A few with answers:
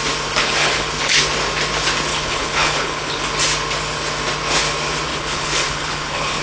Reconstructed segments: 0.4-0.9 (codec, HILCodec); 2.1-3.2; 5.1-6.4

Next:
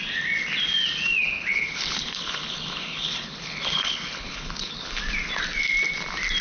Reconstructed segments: 1.2-5.0 (codec, HILCodec)

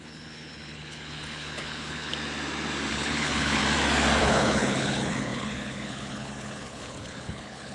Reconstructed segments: 0.0-2.1 (codec, HILCodec); 2.9-3.6; 4.2-7.7

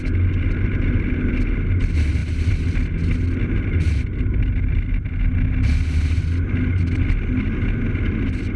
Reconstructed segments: none

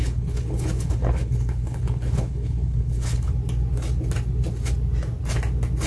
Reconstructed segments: 0.0-3.3 (codec, HILCodec)

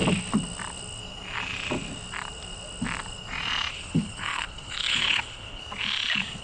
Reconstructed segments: 3.7-5.6 (codec, HILCodec)

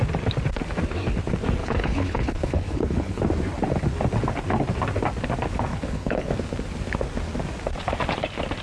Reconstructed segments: 1.6-3.2 (codec, HILCodec); 5.7-6.3

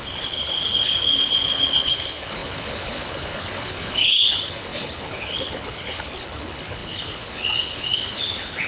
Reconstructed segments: 0.0-8.7 (codec, HILCodec)